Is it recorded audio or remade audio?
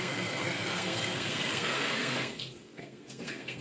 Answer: remade